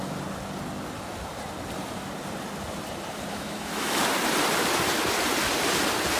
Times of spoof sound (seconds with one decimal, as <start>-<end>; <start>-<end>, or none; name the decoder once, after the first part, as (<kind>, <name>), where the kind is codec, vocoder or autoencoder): 3.3-4.0 (autoencoder, DAC-VAE)